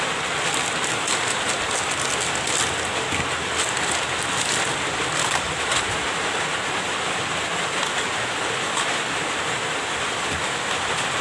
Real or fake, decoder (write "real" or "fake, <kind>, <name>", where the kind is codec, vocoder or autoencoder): real